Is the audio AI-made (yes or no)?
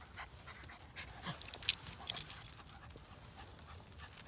no